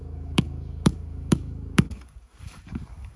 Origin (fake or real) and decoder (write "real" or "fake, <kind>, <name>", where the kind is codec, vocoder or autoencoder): fake, codec, DAC